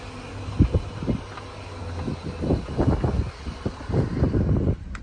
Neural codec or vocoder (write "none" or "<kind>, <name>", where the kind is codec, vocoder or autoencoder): none